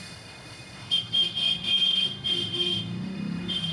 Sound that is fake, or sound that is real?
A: fake